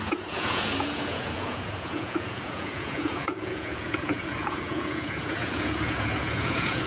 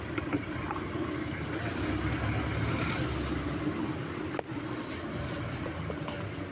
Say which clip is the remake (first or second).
first